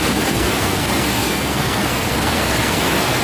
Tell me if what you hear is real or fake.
fake